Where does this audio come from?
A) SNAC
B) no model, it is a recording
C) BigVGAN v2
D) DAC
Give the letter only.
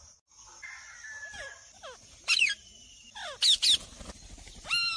B